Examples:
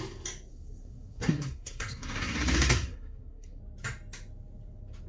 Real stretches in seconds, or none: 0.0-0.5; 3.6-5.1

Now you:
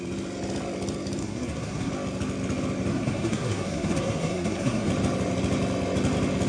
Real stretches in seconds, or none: 0.0-1.2; 1.9-2.9; 4.9-6.5

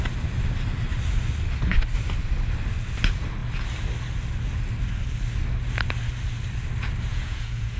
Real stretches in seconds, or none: 0.0-7.1